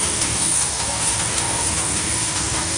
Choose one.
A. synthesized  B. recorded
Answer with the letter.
A